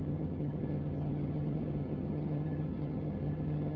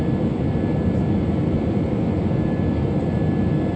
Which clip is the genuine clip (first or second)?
second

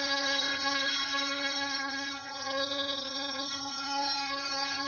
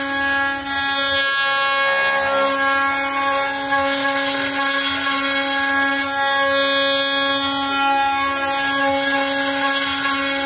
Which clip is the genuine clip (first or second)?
second